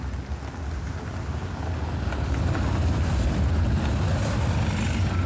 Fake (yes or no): no